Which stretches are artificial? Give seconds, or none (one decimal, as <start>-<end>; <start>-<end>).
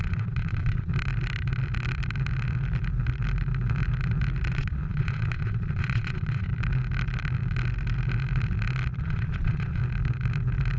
0.0-0.9; 4.5-6.5; 9.0-9.8